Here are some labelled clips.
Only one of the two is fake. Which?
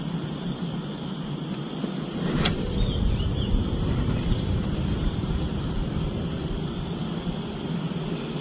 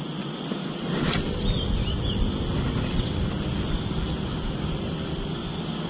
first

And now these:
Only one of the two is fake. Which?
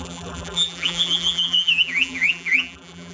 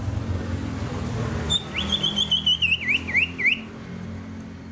first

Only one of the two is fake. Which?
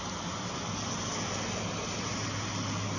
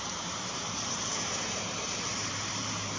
second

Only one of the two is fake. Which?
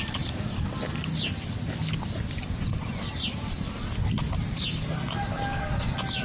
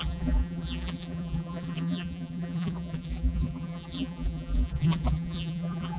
second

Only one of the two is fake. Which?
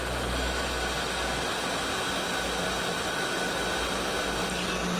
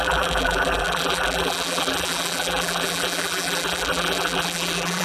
second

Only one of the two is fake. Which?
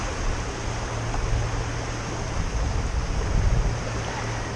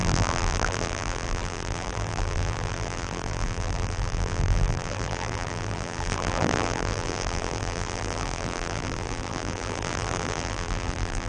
second